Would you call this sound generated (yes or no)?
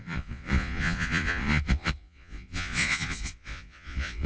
yes